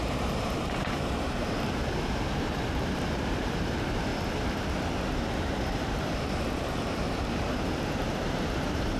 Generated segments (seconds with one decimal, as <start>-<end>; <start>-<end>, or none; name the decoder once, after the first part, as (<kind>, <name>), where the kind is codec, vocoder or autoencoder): 0.0-1.8 (vocoder, BigVGAN v2); 2.5-4.1; 5.7-9.0